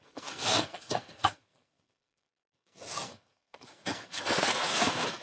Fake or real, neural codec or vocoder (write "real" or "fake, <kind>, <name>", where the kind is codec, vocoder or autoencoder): fake, codec, SNAC